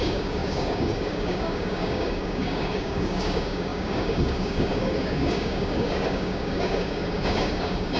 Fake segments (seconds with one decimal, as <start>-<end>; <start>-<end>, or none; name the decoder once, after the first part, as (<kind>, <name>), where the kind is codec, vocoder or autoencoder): 0.0-8.0 (codec, DAC)